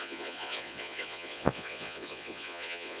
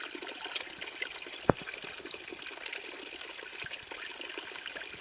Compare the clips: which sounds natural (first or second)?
second